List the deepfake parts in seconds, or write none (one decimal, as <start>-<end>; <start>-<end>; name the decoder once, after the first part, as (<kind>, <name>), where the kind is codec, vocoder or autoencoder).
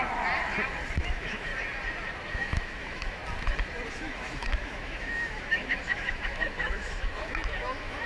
1.0-1.5 (autoencoder, DAC-VAE); 2.3-3.2; 3.9-8.1